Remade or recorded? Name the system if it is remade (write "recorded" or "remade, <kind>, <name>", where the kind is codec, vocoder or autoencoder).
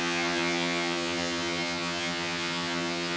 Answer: remade, vocoder, HiFi-GAN